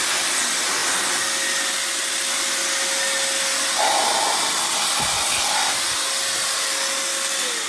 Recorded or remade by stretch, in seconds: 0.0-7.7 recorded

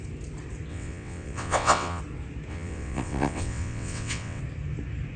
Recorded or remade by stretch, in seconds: 0.0-0.7 recorded; 0.7-2.0 remade; 2.0-2.5 recorded; 2.5-4.4 remade; 4.4-5.2 recorded

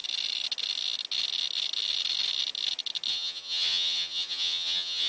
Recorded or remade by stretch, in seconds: 0.0-3.1 recorded; 3.1-5.1 remade

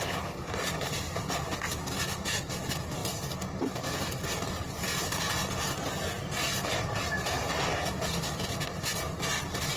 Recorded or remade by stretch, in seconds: 0.0-9.8 recorded

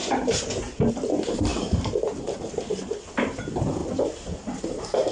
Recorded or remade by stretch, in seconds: 0.0-5.1 recorded

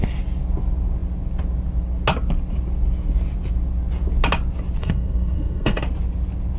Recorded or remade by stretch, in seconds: 0.0-4.8 recorded; 4.8-5.8 remade; 5.8-6.6 recorded